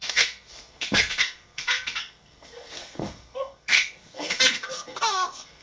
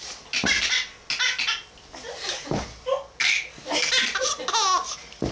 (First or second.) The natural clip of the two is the second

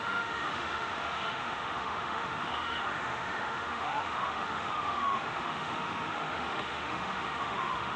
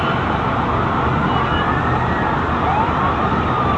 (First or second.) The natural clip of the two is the second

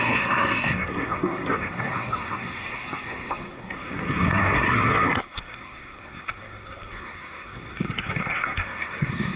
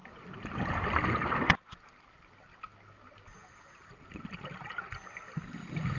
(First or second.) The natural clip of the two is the second